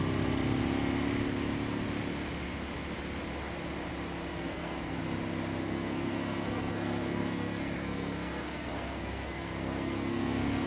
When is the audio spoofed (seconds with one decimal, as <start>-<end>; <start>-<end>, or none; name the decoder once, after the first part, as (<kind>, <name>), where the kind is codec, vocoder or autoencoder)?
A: 4.3-5.0 (codec, SNAC); 5.6-10.7

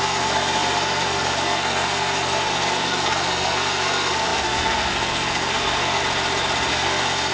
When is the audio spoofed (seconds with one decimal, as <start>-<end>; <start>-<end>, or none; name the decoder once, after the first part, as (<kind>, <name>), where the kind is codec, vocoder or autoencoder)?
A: 0.0-6.0 (codec, SNAC); 6.7-7.3